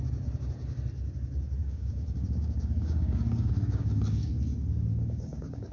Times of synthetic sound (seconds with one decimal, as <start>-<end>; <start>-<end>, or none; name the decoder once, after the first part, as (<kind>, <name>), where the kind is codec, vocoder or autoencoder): 1.6-4.3 (codec, DAC); 4.9-5.7